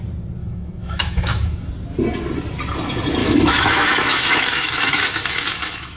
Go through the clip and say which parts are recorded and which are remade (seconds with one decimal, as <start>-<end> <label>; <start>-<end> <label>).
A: 0.0-0.4 recorded; 0.4-1.7 remade; 1.7-3.2 recorded; 3.2-6.0 remade